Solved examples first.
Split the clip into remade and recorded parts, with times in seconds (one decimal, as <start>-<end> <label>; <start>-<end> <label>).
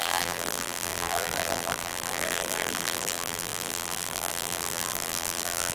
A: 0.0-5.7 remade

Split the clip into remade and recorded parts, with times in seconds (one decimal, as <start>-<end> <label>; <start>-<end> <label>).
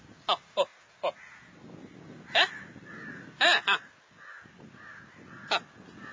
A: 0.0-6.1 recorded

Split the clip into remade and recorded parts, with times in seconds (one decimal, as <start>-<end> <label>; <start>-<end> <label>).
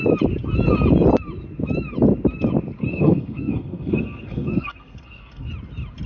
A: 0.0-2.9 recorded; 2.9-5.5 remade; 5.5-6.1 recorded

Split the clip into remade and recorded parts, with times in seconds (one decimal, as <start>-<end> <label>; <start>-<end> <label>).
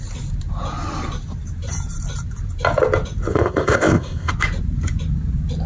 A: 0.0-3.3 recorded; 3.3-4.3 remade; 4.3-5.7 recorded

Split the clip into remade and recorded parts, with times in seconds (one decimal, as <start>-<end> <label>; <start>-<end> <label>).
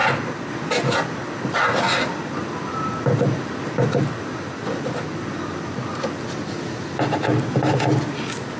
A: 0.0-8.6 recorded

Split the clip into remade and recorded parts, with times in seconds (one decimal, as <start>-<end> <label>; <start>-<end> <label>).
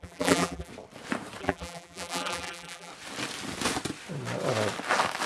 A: 0.0-0.7 remade; 0.7-1.4 recorded; 1.4-2.9 remade; 2.9-5.3 recorded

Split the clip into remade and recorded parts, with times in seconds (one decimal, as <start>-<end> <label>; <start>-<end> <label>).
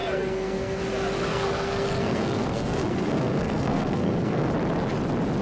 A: 0.0-0.8 remade; 0.8-1.3 recorded; 1.3-4.5 remade; 4.5-5.4 recorded